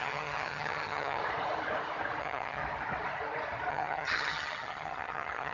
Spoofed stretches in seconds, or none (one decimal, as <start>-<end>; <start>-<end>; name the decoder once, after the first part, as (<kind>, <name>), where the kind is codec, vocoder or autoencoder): 0.0-1.2 (vocoder, HiFi-GAN); 2.2-2.6; 3.7-5.5